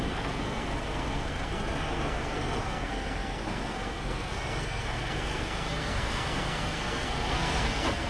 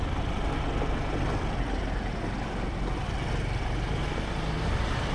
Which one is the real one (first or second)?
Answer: second